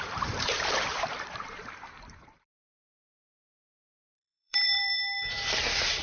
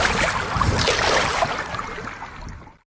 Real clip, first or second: second